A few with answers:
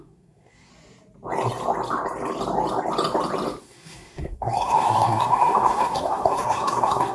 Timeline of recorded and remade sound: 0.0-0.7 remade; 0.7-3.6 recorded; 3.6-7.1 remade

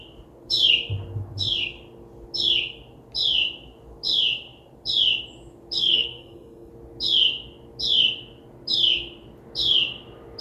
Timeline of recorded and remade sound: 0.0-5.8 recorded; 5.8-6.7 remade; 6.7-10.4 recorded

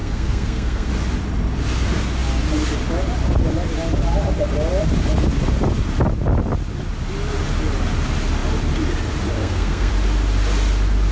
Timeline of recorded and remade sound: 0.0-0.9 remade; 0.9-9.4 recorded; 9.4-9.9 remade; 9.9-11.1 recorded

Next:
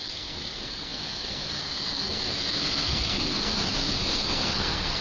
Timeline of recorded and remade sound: 0.0-5.0 remade

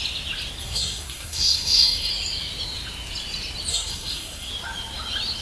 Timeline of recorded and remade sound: 0.0-0.6 recorded; 0.6-2.1 remade; 2.1-3.7 recorded; 3.7-4.5 remade; 4.5-5.4 recorded